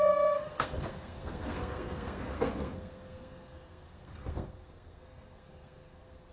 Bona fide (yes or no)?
no